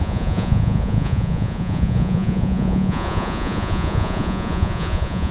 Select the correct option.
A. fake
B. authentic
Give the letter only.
A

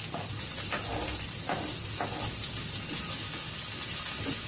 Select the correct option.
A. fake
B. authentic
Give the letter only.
B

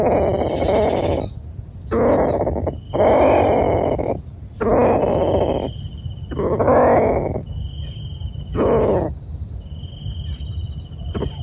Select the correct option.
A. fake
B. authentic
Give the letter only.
B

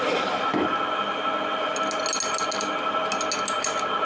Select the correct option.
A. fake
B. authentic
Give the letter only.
B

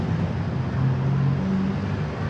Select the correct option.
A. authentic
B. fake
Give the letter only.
A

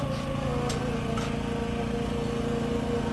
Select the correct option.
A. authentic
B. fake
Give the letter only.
A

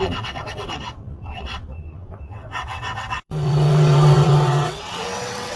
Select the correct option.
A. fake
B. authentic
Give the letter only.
A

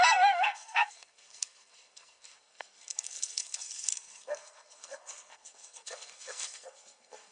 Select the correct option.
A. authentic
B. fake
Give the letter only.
B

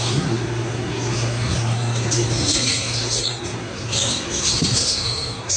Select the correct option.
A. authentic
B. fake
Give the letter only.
B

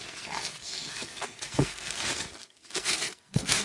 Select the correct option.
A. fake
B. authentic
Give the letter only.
A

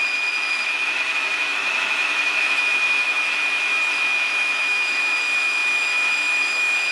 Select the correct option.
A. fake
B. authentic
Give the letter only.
A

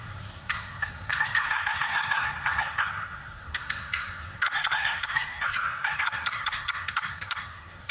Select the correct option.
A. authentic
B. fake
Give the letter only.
B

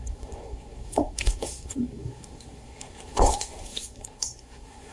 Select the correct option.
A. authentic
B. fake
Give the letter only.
B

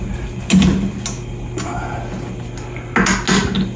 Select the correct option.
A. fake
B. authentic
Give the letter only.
B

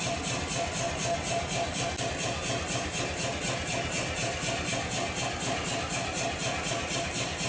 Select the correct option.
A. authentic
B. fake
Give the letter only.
A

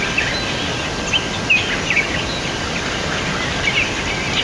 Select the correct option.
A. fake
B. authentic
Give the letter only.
B